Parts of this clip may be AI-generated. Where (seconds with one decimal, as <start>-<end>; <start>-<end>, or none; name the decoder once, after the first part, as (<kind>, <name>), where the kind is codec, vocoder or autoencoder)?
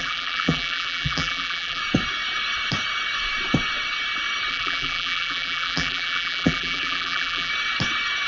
0.0-1.8 (vocoder, BigVGAN v2); 4.5-7.5